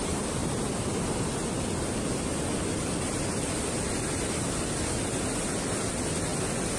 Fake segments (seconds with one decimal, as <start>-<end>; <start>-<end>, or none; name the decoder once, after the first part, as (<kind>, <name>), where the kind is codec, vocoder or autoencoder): none